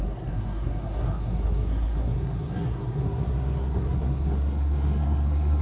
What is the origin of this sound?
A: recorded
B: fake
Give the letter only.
B